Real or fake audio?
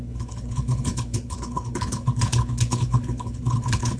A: fake